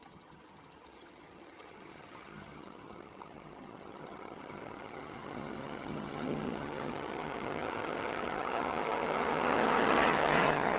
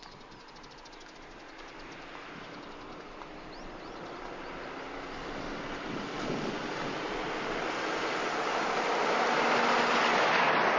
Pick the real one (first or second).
second